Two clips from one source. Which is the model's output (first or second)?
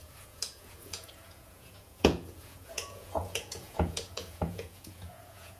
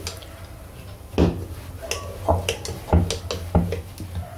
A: first